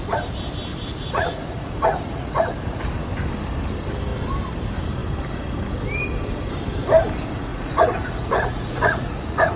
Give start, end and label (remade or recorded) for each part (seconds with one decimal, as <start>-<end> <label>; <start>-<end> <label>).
0.0-0.7 recorded; 0.7-2.8 remade; 2.8-7.5 recorded; 7.5-9.6 remade